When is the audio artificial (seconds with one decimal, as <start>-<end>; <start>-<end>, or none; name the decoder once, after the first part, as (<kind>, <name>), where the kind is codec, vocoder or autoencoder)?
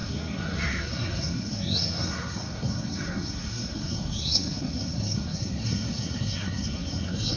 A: 0.0-7.4 (codec, SNAC)